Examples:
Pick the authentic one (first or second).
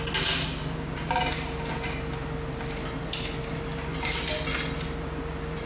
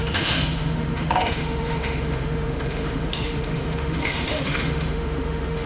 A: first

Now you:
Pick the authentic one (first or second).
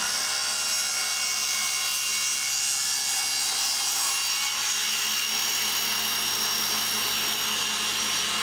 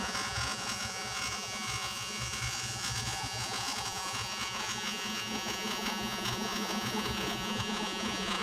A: first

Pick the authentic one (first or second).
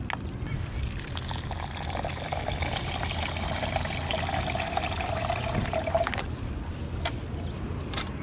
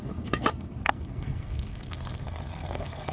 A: first